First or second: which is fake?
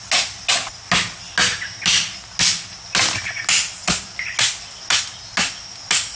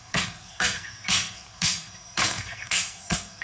second